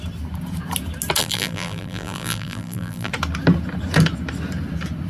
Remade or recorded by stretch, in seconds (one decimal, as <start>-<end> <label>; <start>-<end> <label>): 0.0-1.2 recorded; 1.2-3.1 remade; 3.1-5.1 recorded